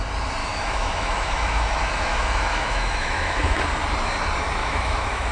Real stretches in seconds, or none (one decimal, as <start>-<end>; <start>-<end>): 0.0-0.4; 3.6-4.6